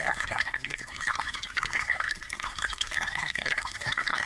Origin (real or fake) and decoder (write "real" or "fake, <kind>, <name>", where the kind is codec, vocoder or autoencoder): fake, codec, SNAC